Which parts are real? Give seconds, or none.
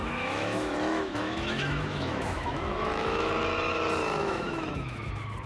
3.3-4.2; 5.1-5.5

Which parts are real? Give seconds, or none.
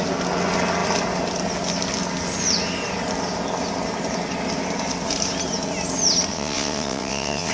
0.0-6.3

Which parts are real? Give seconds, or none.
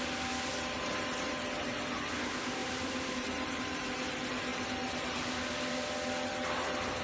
0.0-2.6; 3.6-7.0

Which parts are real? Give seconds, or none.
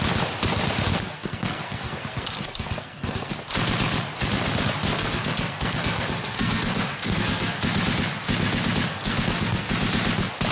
0.0-0.9; 3.3-5.0; 7.6-8.9; 9.7-10.5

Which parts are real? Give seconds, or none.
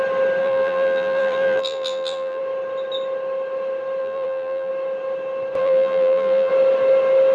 0.0-0.4; 2.4-4.0; 4.7-5.6; 6.5-7.3